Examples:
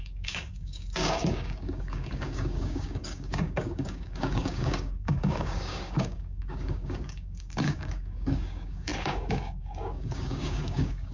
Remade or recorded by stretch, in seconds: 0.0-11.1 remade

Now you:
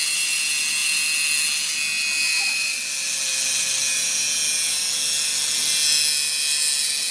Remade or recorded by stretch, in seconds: 0.0-7.1 recorded

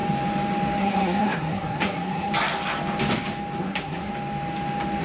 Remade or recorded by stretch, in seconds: 0.0-0.8 recorded; 0.8-2.3 remade; 2.3-3.6 recorded; 3.6-4.1 remade; 4.1-5.0 recorded

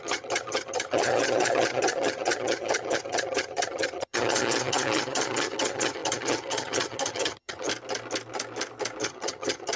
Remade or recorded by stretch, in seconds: 0.0-7.7 remade; 7.7-9.0 recorded; 9.0-9.8 remade

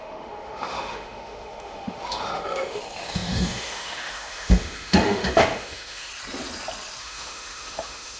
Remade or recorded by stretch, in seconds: 0.0-6.1 remade; 6.1-7.0 recorded; 7.0-8.2 remade

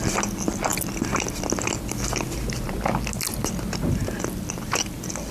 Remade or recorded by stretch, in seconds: 0.0-5.3 recorded

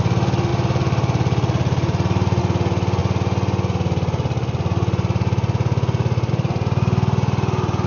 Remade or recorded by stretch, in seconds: 0.0-0.5 recorded; 0.5-2.4 remade; 2.4-7.9 recorded